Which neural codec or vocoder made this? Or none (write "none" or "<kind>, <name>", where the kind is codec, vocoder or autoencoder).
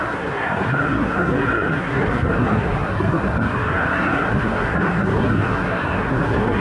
codec, SNAC